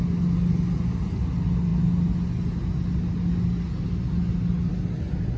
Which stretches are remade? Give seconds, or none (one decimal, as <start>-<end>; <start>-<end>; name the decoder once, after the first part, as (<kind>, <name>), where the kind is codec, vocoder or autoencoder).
none